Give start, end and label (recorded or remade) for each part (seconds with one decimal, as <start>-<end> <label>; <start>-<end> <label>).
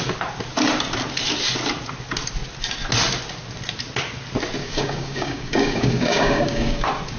0.0-4.6 recorded; 4.6-6.8 remade; 6.8-7.2 recorded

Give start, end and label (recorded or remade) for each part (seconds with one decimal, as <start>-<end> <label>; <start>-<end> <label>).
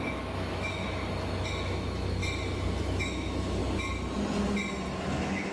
0.0-1.0 remade; 1.0-1.6 recorded; 1.6-2.2 remade; 2.2-2.8 recorded; 2.8-3.6 remade; 3.6-5.0 recorded; 5.0-5.5 remade